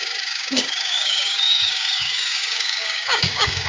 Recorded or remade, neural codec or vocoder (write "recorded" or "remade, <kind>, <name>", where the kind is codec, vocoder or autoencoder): remade, codec, DAC